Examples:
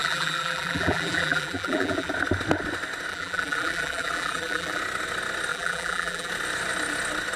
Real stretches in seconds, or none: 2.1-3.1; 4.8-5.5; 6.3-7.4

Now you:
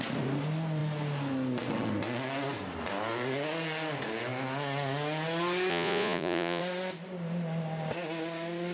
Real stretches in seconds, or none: 0.0-5.7; 6.6-8.7

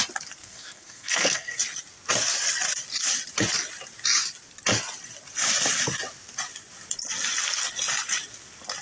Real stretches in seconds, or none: 0.0-0.4; 1.6-8.8

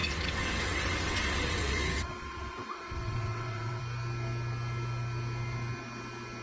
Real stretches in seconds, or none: 3.8-6.4

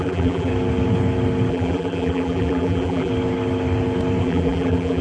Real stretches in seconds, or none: 0.5-1.5; 3.1-4.2